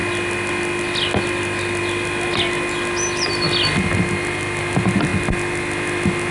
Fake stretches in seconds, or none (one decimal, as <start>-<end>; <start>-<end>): none